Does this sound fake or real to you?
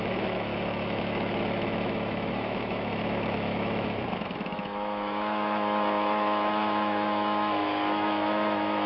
fake